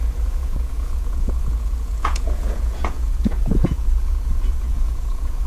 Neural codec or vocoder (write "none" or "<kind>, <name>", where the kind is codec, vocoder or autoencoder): vocoder, Vocos